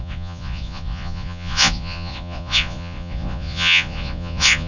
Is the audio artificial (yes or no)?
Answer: yes